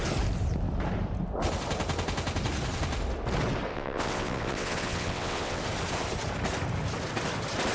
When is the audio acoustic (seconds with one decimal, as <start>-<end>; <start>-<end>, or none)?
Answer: 0.0-3.7; 5.6-7.7